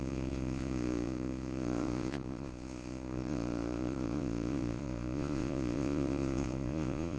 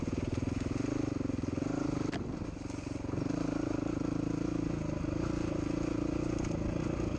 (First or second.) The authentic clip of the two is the second